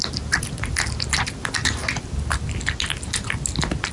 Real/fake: real